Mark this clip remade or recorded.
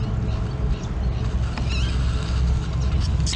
recorded